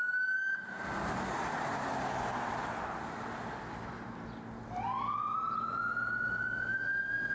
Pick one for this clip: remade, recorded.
recorded